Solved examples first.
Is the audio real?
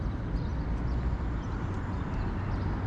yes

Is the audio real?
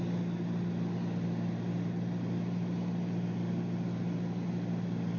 yes